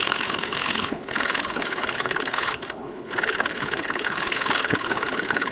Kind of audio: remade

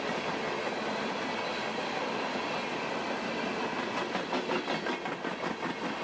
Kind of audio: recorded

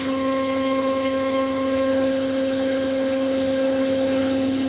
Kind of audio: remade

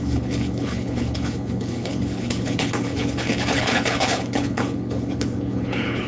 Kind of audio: remade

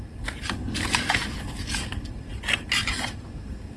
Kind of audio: recorded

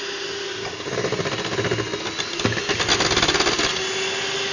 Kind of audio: recorded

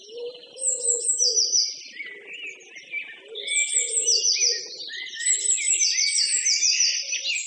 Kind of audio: recorded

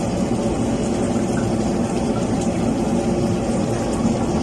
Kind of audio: recorded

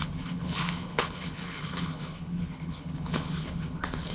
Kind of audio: remade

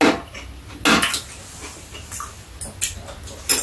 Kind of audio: recorded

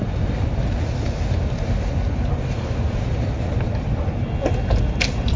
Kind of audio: recorded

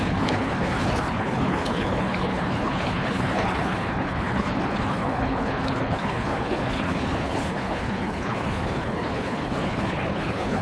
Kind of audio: remade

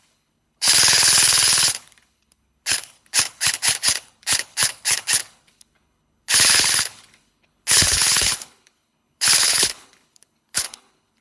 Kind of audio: remade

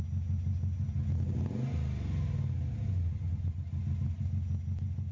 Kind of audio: recorded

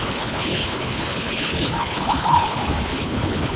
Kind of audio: remade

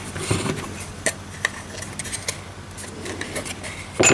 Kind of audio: recorded